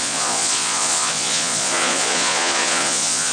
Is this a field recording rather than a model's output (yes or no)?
no